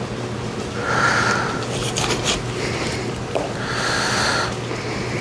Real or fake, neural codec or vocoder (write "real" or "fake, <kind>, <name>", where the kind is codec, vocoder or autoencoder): real